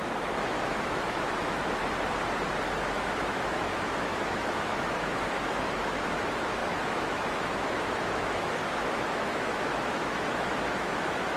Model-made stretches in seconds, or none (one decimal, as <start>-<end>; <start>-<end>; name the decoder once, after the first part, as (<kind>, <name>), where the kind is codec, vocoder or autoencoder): 0.0-1.8 (autoencoder, DAC-VAE); 2.8-11.4